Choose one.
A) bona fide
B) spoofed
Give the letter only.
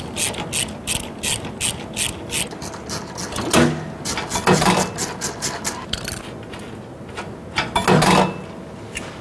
A